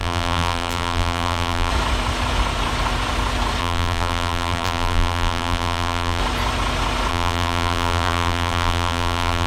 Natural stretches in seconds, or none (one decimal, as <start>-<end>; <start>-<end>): 1.7-3.6; 6.2-7.1